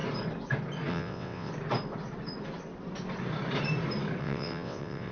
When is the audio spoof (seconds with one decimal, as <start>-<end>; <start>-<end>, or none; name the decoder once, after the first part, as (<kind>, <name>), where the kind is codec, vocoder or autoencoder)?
0.9-1.5 (vocoder, WaveNeXt); 4.2-5.1